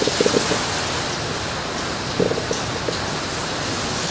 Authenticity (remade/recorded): recorded